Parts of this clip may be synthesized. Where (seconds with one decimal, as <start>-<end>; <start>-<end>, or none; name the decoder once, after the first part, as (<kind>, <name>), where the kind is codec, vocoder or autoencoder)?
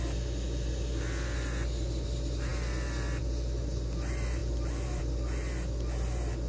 none